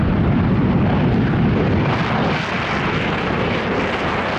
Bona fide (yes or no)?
yes